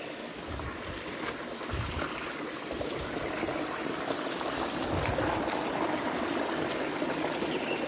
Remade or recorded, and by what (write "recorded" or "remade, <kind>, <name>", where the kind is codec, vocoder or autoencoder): recorded